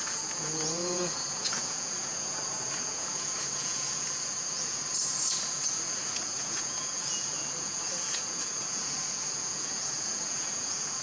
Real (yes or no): no